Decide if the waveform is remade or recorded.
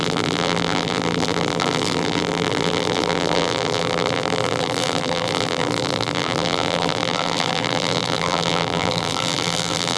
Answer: remade